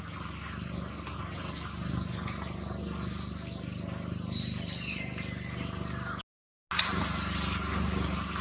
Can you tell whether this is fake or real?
real